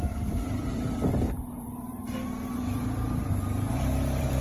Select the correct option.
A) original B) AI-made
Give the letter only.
B